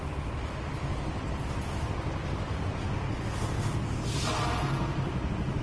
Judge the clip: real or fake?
real